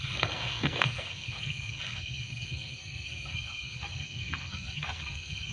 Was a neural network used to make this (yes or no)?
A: yes